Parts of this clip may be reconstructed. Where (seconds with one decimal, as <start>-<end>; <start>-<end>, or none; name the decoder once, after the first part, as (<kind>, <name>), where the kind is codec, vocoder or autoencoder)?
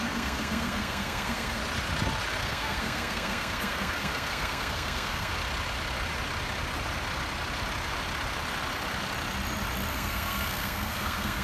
0.0-1.6 (codec, SNAC); 2.4-5.3; 9.9-11.4